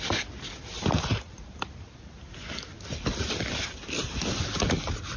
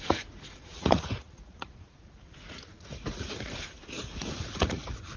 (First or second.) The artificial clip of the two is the second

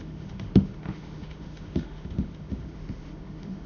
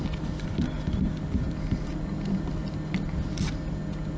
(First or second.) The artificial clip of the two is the first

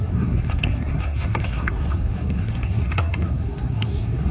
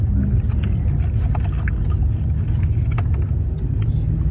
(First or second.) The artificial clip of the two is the first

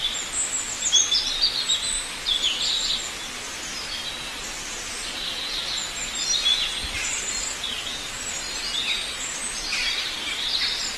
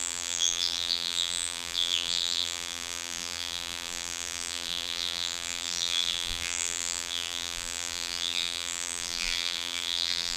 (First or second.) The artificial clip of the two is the second